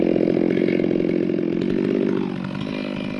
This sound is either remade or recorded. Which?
recorded